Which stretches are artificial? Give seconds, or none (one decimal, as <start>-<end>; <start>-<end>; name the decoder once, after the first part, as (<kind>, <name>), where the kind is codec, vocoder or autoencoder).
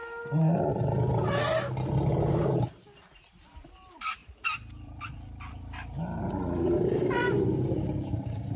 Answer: 1.7-8.6 (vocoder, BigVGAN v2)